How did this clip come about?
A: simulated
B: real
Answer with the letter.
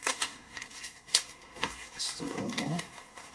A